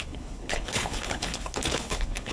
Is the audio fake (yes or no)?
yes